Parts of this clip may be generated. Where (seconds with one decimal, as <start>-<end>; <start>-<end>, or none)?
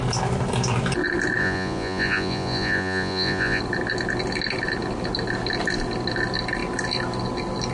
1.4-3.6